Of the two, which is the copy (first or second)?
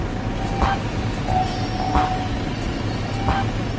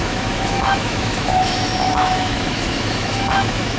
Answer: second